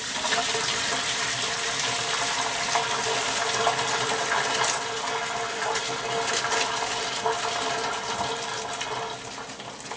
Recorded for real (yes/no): yes